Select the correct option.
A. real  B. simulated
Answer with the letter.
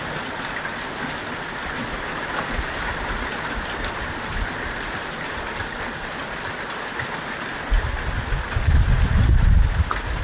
A